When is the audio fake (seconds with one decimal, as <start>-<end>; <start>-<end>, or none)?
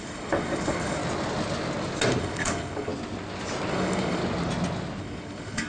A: 0.0-1.0; 2.2-2.9; 3.7-4.2; 5.0-5.7